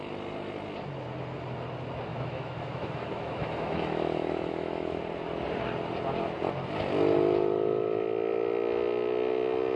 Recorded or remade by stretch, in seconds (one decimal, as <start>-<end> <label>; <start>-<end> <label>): 0.0-2.1 recorded; 2.1-5.0 remade; 5.0-9.8 recorded